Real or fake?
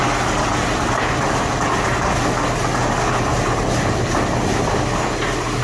real